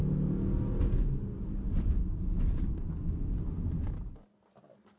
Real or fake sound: real